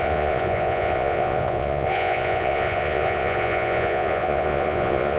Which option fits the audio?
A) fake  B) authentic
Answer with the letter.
A